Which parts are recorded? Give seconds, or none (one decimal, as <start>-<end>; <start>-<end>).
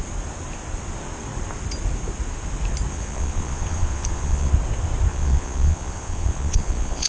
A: 0.0-2.9; 4.5-5.1